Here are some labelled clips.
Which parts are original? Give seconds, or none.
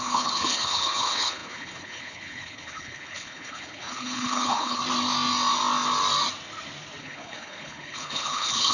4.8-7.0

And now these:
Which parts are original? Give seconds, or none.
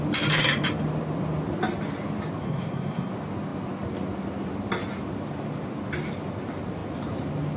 0.0-2.4; 3.1-7.6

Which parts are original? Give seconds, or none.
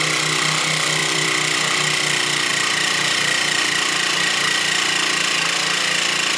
0.0-1.0; 1.7-2.5; 4.2-6.4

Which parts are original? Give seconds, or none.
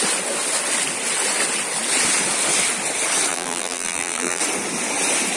0.0-3.3; 4.4-5.4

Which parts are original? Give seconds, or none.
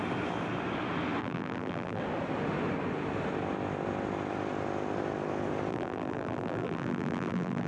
0.0-1.2; 2.0-5.7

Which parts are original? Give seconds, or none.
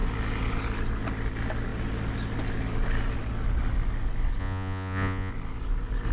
0.0-4.4; 5.3-6.1